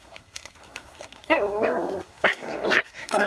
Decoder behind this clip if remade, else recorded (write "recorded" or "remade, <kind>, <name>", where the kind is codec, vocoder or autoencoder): remade, codec, SNAC